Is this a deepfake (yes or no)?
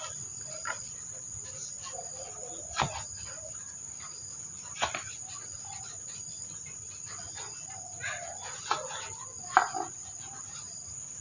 no